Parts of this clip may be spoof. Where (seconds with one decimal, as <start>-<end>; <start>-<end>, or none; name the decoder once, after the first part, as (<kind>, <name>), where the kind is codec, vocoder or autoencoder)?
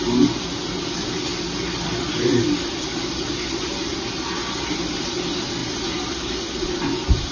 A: none